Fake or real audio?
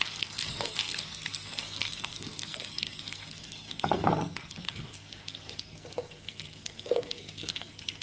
fake